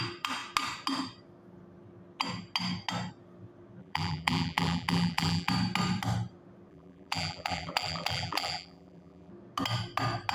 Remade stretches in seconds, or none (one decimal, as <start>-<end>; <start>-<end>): 3.8-5.5; 6.7-9.3